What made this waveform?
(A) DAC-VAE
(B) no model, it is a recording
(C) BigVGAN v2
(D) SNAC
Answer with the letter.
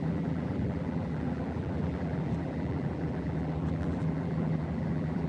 C